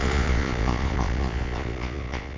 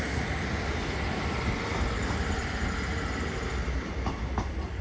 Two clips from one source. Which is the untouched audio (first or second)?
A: second